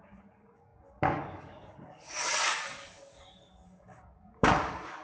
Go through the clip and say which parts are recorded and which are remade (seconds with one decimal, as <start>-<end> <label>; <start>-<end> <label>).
0.0-5.0 remade